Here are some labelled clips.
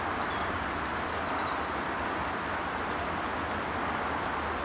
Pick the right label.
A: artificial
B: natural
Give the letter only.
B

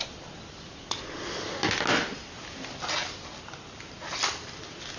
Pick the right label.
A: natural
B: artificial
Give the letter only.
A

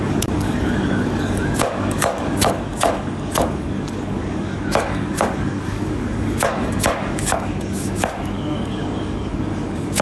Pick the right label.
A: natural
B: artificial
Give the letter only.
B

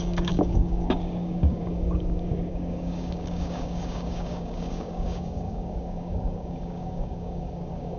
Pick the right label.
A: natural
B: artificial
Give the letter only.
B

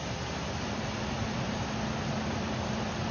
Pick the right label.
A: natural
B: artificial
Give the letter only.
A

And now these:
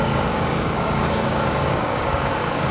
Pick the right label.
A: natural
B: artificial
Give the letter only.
B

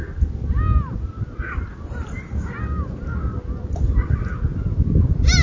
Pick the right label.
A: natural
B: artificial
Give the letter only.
A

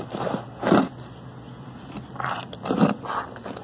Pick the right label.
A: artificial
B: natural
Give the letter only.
B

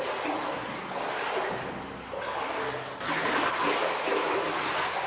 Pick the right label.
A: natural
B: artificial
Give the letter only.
A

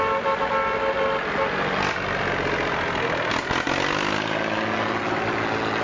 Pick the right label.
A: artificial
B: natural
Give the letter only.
B